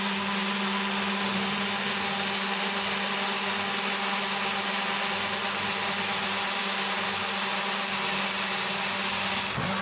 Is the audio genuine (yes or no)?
yes